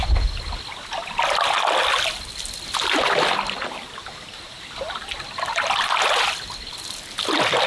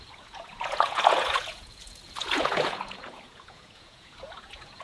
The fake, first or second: second